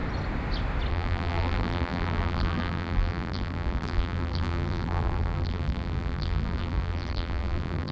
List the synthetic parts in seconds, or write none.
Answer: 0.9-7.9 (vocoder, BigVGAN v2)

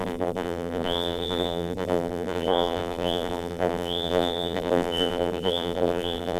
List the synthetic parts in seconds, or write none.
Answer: 0.0-6.4 (vocoder, BigVGAN v2)

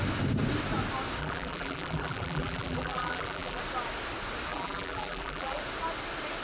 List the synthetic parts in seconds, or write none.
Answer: 1.2-3.6 (vocoder, BigVGAN v2); 4.5-5.6

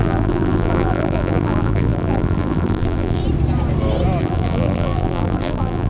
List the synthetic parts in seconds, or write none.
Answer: 0.0-3.2 (vocoder, BigVGAN v2); 4.2-5.9

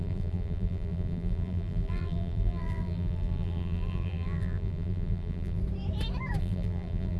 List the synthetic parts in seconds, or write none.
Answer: 0.0-5.6 (vocoder, BigVGAN v2); 6.4-7.2